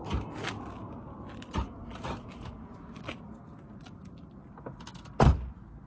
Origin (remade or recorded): recorded